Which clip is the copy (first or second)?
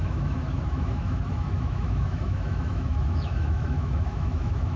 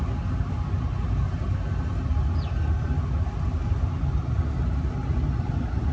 first